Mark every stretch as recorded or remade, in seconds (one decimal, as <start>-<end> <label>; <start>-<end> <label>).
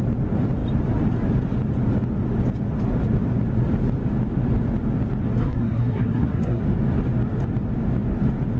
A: 0.0-5.4 recorded; 5.4-6.6 remade; 6.6-8.6 recorded